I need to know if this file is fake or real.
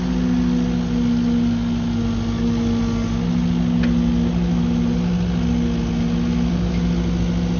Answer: real